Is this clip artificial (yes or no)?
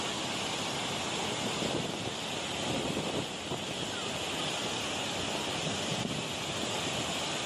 no